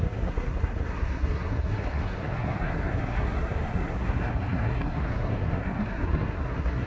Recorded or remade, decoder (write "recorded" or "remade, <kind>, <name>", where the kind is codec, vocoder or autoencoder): remade, codec, SNAC